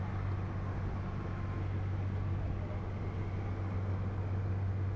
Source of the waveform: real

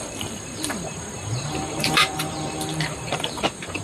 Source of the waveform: fake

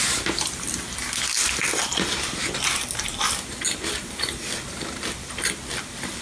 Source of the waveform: real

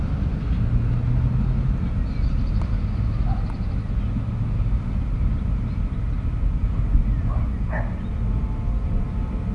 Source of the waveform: real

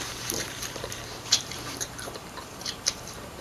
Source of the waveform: fake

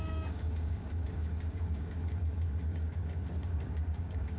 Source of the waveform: fake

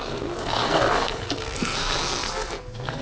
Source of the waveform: fake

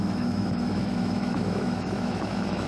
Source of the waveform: fake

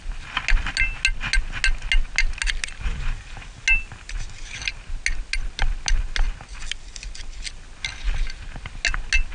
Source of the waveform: real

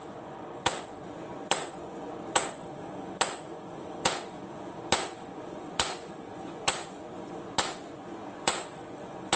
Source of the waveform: fake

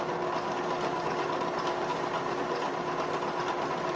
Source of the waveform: real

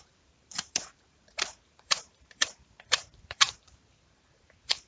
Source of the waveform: fake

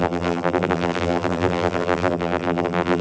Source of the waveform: fake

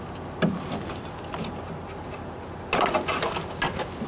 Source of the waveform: real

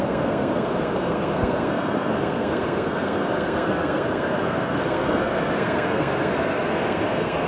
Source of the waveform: fake